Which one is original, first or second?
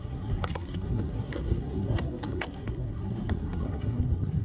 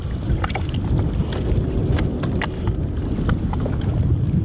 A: second